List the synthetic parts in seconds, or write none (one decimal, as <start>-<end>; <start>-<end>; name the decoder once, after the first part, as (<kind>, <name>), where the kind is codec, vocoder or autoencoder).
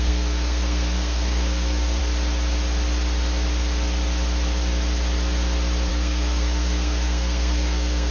0.0-2.0 (codec, SNAC); 5.9-8.1